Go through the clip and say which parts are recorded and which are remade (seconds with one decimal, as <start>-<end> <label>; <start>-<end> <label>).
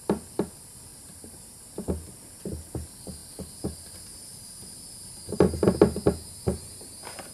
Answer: 0.0-0.9 recorded; 0.9-1.6 remade; 1.6-7.3 recorded